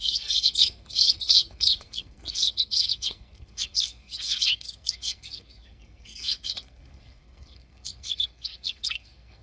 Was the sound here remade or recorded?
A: remade